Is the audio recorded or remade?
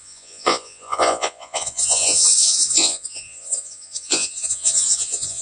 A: remade